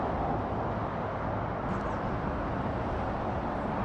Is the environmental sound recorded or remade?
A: recorded